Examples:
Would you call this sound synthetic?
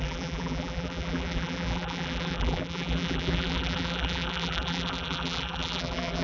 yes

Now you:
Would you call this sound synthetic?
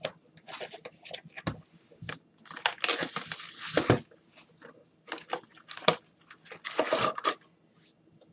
no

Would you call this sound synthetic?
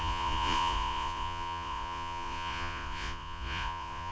yes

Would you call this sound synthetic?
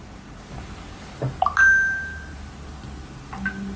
no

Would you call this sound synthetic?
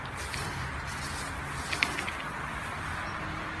no